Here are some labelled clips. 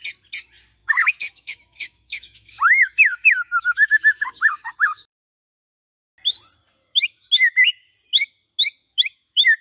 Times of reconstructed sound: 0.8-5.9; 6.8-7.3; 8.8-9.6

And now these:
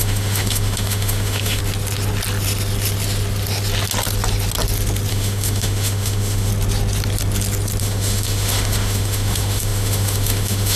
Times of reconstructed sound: 0.0-1.6; 5.1-6.5; 7.8-10.8

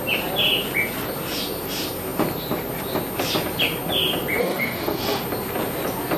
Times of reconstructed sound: 4.4-5.2

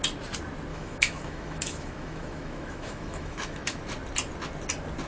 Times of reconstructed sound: 0.7-3.8